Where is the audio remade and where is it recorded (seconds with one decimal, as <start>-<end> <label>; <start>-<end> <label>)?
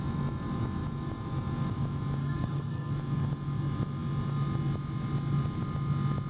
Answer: 0.0-2.2 recorded; 2.2-2.9 remade; 2.9-6.3 recorded